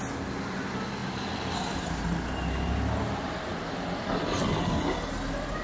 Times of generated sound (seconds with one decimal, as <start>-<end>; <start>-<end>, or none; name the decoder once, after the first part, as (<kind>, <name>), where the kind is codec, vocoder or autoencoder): none